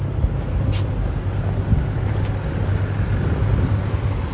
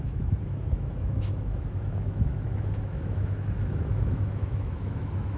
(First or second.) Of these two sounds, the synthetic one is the second